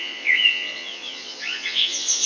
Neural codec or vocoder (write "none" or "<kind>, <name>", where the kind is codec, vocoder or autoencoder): vocoder, Vocos